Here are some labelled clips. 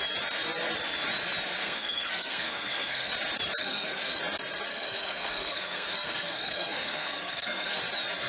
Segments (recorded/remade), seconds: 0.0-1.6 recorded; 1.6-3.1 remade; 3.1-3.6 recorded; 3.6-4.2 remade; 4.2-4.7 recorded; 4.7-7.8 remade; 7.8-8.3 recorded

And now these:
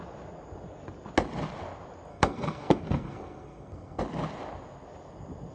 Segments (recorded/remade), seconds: 0.0-2.1 recorded; 2.1-4.0 remade; 4.0-5.5 recorded

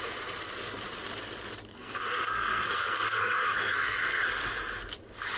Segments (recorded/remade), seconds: 0.0-1.7 recorded; 1.7-4.2 remade; 4.2-5.4 recorded